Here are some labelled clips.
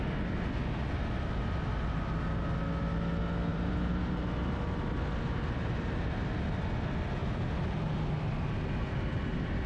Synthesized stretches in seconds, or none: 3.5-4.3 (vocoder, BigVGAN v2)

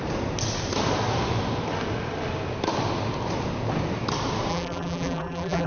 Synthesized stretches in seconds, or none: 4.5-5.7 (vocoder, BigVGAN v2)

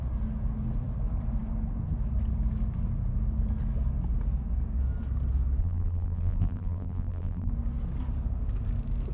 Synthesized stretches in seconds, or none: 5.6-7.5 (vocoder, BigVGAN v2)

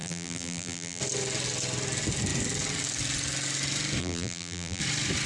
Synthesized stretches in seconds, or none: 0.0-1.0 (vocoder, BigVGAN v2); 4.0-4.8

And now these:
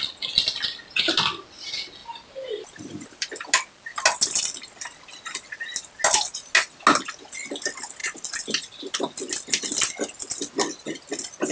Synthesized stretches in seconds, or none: 2.0-3.3 (vocoder, BigVGAN v2); 8.0-8.9

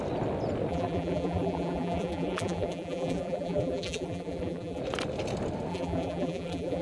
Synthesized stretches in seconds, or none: 0.7-4.8 (vocoder, BigVGAN v2); 5.7-6.8